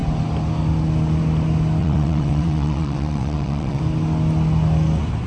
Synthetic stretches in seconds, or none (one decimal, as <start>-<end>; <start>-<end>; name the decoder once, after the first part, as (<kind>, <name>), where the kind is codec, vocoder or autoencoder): 1.8-3.8 (vocoder, WaveNeXt)